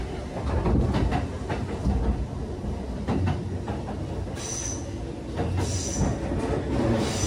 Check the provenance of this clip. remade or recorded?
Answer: recorded